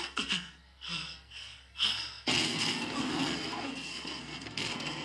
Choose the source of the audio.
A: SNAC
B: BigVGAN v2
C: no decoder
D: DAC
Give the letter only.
A